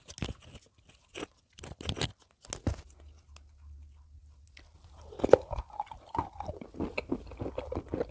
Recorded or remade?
recorded